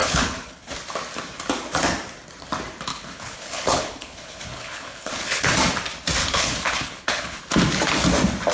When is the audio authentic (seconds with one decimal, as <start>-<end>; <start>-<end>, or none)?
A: 0.7-2.9; 5.5-6.2; 7.4-8.5